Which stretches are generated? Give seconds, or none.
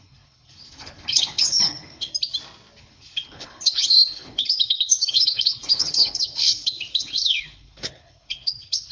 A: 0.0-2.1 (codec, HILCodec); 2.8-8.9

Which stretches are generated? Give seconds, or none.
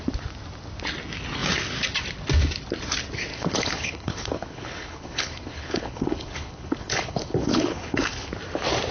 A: 3.3-8.3 (codec, HILCodec)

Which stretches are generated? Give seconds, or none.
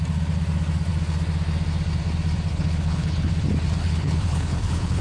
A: 2.5-3.3 (codec, HILCodec); 3.8-5.0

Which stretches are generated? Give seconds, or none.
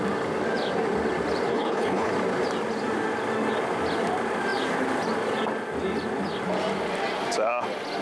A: 1.5-2.1 (codec, HILCodec)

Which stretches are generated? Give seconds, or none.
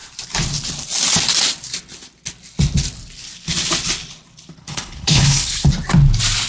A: 4.6-5.7 (codec, HILCodec)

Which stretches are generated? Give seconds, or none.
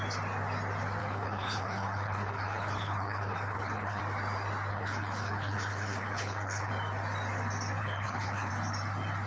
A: 1.0-4.0 (codec, HILCodec); 4.7-6.7; 7.8-8.5